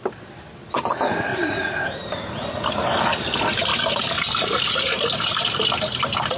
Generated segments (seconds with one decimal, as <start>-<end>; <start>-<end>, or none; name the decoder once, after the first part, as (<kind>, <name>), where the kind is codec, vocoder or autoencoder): 1.3-2.3 (vocoder, BigVGAN v2)